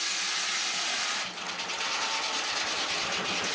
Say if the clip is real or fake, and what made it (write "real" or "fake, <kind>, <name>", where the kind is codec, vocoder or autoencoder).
real